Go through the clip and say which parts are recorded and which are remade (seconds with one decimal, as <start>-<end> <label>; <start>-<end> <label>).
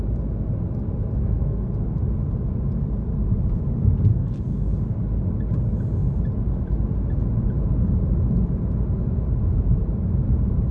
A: 0.0-1.2 recorded; 1.2-1.7 remade; 1.7-4.1 recorded; 4.1-4.7 remade; 4.7-10.7 recorded